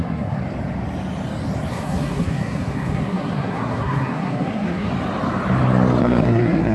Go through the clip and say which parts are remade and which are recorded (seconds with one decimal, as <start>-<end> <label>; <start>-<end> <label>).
0.0-0.4 remade; 0.4-1.7 recorded; 1.7-4.9 remade; 4.9-6.0 recorded; 6.0-6.7 remade